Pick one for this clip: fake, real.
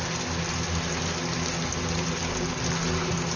real